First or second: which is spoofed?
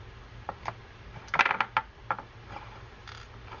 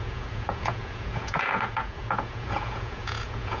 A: second